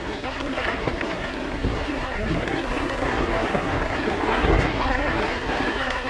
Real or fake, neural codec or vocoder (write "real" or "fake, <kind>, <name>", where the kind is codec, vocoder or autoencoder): fake, codec, SNAC